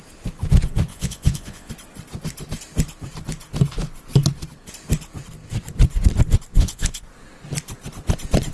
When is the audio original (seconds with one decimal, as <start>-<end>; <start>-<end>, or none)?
0.0-0.9; 1.7-6.5; 7.0-8.5